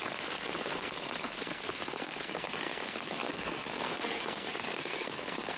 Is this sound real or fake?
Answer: fake